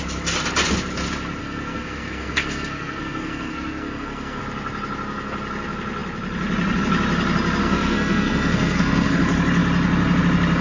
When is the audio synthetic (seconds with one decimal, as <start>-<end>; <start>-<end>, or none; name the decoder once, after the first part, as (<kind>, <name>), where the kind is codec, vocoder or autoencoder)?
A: 1.4-4.4 (codec, SNAC); 7.6-9.2